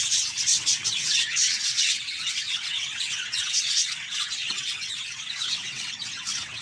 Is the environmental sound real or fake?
fake